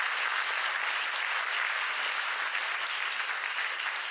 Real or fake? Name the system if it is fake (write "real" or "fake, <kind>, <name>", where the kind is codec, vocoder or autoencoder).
real